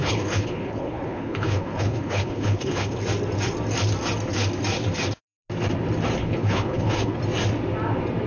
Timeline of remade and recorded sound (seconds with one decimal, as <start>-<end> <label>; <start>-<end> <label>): 0.0-3.0 remade; 3.0-6.2 recorded; 6.2-7.2 remade; 7.2-8.3 recorded